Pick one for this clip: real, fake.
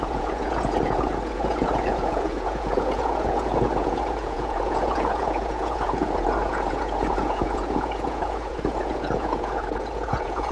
fake